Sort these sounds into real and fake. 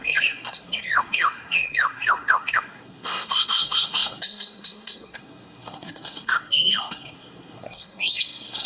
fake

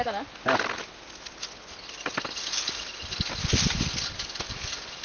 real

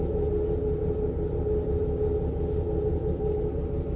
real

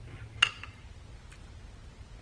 real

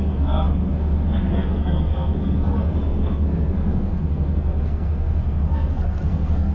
fake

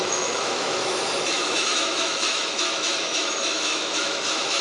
fake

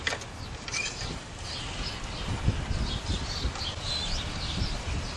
real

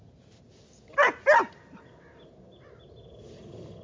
real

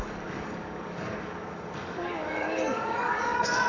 fake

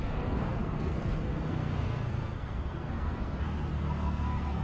fake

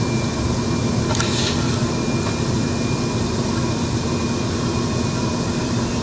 real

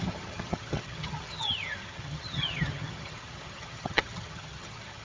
fake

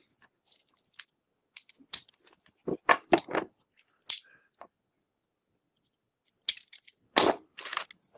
real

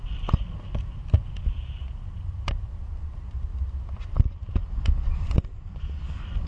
real